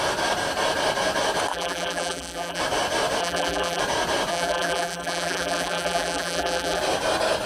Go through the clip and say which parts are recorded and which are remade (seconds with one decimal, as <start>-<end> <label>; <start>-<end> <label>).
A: 0.0-1.5 recorded; 1.5-2.6 remade; 2.6-3.2 recorded; 3.2-3.8 remade; 3.8-4.3 recorded; 4.3-6.8 remade; 6.8-7.5 recorded